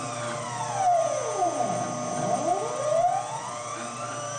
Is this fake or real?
real